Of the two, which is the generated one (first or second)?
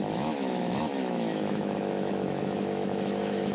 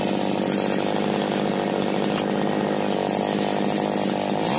first